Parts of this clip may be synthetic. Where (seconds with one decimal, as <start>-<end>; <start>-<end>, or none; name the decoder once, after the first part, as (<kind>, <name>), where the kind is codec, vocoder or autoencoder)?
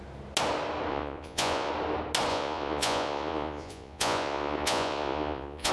0.9-1.7 (vocoder, Vocos); 2.3-5.7